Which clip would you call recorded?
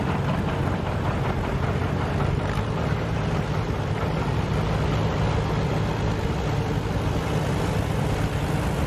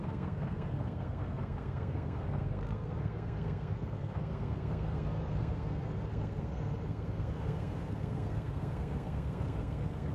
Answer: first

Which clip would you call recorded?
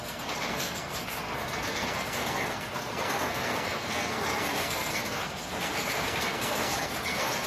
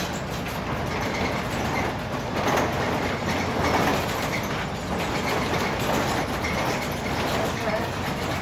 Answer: second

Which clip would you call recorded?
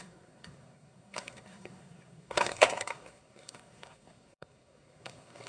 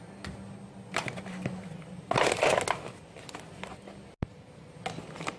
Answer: second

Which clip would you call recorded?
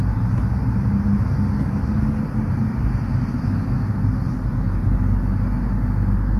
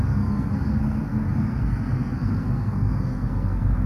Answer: first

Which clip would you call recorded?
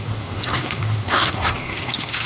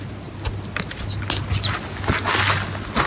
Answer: second